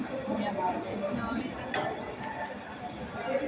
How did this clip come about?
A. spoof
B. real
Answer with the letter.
B